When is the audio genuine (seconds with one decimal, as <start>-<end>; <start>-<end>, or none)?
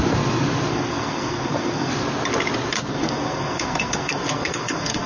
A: 0.0-0.7; 1.9-2.9